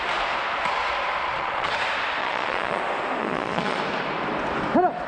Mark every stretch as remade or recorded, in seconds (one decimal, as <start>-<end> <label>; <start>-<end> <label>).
0.0-1.2 recorded; 1.2-1.8 remade; 1.8-2.2 recorded; 2.2-2.8 remade; 2.8-3.2 recorded; 3.2-3.8 remade; 3.8-5.1 recorded